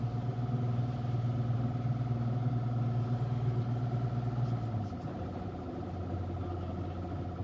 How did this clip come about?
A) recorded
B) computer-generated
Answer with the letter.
A